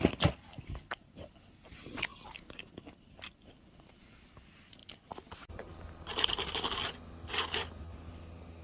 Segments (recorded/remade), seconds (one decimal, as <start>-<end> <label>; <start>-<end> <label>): 0.0-8.6 recorded